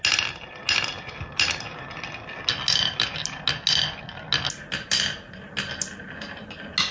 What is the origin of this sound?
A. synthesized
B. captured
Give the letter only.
B